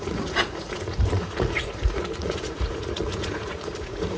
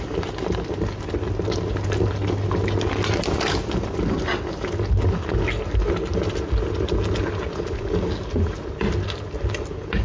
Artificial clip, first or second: first